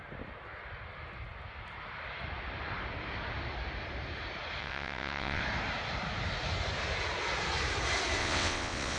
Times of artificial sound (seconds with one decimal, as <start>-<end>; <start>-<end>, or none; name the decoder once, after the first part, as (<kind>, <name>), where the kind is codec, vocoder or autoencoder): 4.6-5.4 (vocoder, WaveNeXt); 8.2-9.0